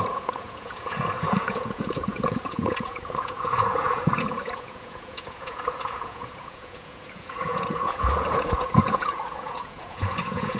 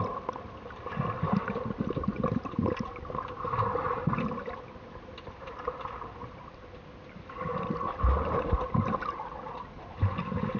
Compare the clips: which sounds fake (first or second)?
first